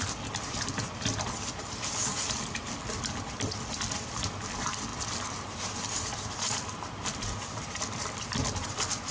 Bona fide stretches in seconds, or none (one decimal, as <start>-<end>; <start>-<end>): 0.0-9.1